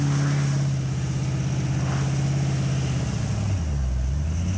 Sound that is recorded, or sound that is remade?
recorded